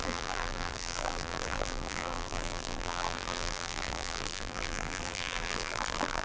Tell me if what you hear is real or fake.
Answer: fake